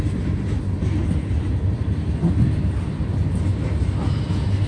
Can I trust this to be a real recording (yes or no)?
yes